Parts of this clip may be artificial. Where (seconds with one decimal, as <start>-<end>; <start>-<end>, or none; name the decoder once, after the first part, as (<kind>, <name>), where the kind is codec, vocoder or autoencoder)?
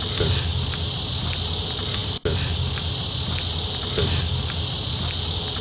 none